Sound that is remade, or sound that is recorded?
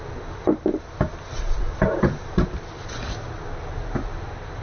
recorded